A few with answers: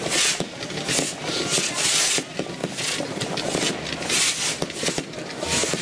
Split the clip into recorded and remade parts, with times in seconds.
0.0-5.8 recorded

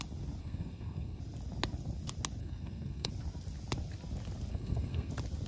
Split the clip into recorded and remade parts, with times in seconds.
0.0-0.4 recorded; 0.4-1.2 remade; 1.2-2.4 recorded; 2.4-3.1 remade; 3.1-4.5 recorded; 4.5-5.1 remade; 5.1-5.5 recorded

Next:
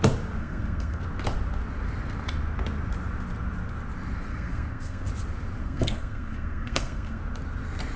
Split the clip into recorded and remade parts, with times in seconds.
0.0-0.4 recorded; 0.4-1.0 remade; 1.0-4.3 recorded; 4.3-5.1 remade; 5.1-5.6 recorded; 5.6-7.2 remade; 7.2-8.0 recorded

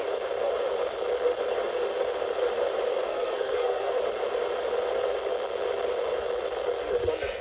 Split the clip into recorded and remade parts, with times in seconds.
0.0-3.1 recorded; 3.1-4.0 remade; 4.0-7.4 recorded

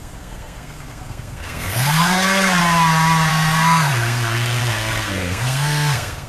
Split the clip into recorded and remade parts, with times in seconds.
0.0-2.6 remade; 2.6-3.3 recorded; 3.3-6.3 remade

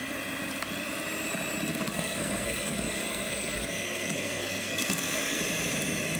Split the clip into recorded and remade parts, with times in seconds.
0.0-1.7 recorded; 1.7-5.4 remade; 5.4-6.2 recorded

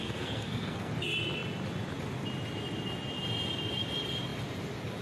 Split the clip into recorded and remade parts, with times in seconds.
0.0-0.9 remade; 0.9-5.0 recorded

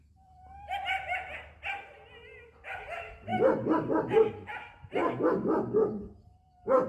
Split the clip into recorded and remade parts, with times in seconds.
0.0-6.9 recorded